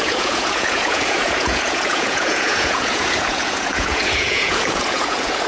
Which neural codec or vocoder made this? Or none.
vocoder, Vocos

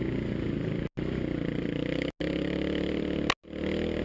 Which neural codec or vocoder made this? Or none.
none